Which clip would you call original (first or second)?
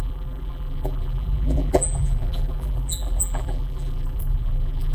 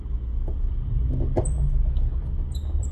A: second